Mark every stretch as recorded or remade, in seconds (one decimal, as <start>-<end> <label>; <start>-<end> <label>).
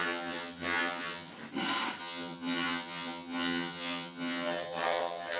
0.0-1.3 remade; 1.3-2.0 recorded; 2.0-5.4 remade